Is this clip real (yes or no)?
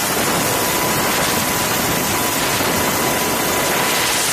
yes